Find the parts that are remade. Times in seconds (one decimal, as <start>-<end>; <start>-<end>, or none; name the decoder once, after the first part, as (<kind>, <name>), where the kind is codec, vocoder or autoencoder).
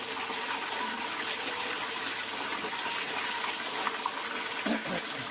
none